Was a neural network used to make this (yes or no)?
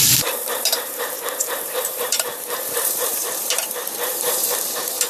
yes